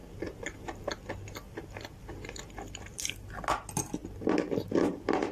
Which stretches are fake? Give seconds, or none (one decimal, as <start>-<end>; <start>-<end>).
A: 0.0-0.9; 2.0-3.1